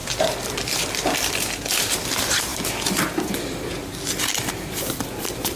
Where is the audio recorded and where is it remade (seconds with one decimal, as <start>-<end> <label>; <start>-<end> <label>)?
0.0-3.7 remade; 3.7-4.3 recorded; 4.3-5.6 remade